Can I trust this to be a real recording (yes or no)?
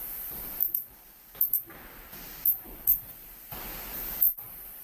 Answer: no